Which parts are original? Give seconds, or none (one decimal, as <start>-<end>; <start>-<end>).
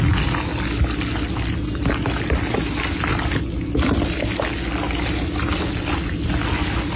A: 0.0-7.0